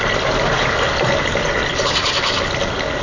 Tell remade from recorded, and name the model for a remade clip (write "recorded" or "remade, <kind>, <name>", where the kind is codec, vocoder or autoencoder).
recorded